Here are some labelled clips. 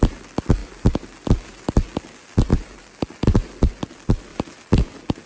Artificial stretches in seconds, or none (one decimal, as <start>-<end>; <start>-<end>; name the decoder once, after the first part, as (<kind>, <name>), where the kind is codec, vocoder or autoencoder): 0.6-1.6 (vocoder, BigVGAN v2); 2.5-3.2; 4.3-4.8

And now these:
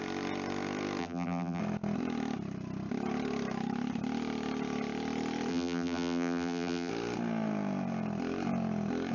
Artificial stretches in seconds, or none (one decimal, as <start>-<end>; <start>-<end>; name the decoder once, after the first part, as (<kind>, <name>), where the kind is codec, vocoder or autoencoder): 1.0-1.6 (vocoder, BigVGAN v2); 5.5-6.9

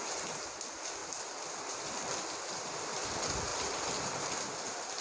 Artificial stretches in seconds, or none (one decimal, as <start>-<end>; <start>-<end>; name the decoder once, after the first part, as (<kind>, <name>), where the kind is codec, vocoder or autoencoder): 1.0-1.6 (vocoder, BigVGAN v2); 3.5-4.6